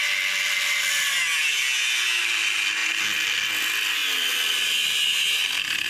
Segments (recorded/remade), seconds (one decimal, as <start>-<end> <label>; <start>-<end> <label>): 0.0-5.9 recorded